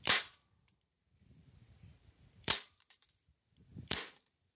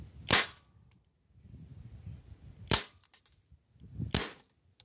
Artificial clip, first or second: first